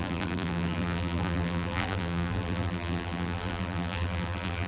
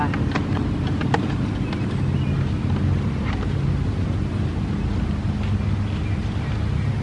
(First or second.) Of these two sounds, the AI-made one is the first